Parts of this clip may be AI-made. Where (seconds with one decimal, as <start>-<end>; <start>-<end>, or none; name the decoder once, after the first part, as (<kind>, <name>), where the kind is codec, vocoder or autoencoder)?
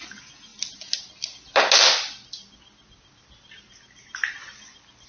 none